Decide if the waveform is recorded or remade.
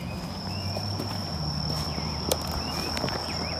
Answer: recorded